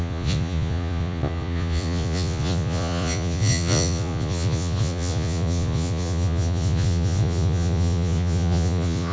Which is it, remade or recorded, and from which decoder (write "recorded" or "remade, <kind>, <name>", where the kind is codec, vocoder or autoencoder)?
remade, vocoder, Vocos